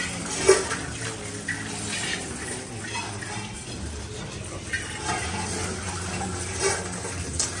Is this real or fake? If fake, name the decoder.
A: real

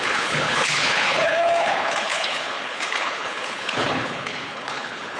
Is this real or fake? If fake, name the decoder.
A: fake, codec, HILCodec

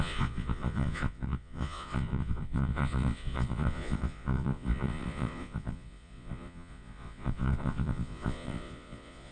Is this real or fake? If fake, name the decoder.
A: fake, vocoder, Vocos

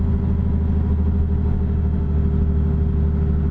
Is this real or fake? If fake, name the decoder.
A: real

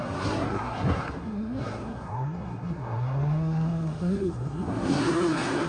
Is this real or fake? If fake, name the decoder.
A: fake, codec, SNAC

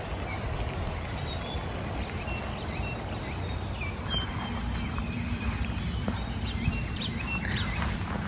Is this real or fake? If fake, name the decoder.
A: real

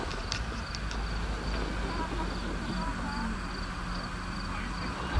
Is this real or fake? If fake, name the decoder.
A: real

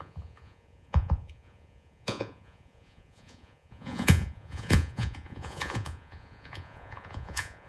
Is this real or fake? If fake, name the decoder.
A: fake, vocoder, Vocos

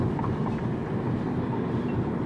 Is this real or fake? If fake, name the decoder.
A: real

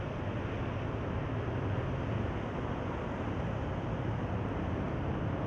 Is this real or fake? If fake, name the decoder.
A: real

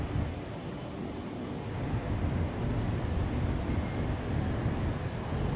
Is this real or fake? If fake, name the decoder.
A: real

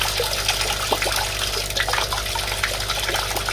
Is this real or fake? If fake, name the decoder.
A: real